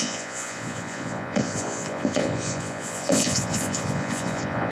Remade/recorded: remade